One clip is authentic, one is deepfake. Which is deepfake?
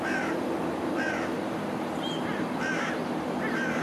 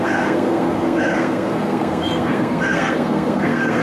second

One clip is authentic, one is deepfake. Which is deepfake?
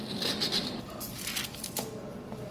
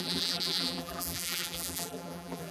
second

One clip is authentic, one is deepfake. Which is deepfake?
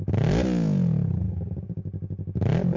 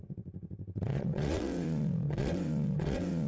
second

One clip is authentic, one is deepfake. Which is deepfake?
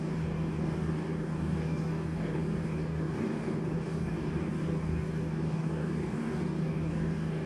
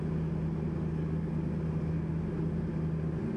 first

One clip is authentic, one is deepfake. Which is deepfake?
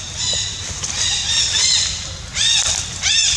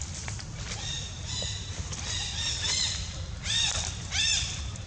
second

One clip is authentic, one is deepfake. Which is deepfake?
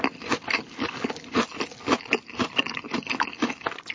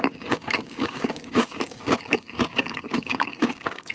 second